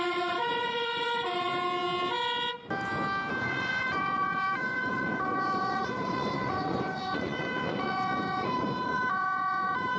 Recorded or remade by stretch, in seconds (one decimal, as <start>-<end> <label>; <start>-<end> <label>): 0.0-1.5 remade; 1.5-3.4 recorded; 3.4-10.0 remade